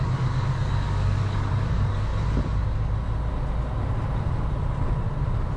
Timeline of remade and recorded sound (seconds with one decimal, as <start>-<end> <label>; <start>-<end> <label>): 0.0-2.1 remade; 2.1-5.6 recorded